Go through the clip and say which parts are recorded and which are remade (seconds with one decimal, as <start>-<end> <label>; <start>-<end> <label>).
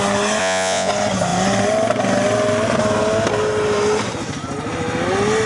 0.0-0.4 recorded; 0.4-0.9 remade; 0.9-5.5 recorded